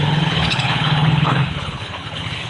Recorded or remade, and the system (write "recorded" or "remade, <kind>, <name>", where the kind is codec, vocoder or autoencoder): remade, codec, HILCodec